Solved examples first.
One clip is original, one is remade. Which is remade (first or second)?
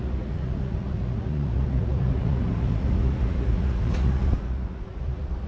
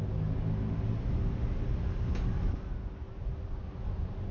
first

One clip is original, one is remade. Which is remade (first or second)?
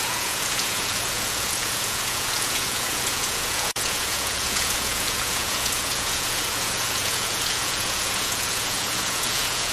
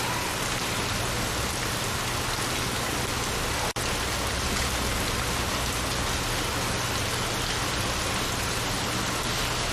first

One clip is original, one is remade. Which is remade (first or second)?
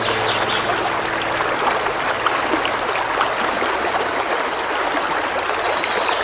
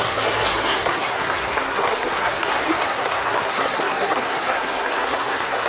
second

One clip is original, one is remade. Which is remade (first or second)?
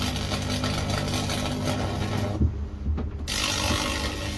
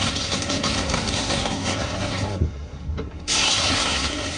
second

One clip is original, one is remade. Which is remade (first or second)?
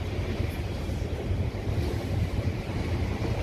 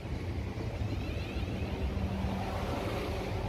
first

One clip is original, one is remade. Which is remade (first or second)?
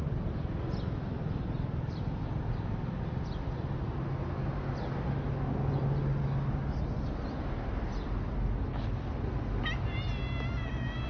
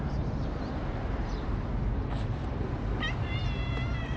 second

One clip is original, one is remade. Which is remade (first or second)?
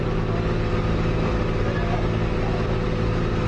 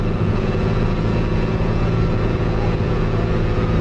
second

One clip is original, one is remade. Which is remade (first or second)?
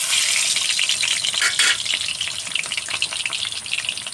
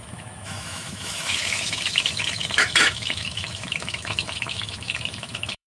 second